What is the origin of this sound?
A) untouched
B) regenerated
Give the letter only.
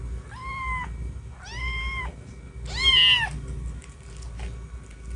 A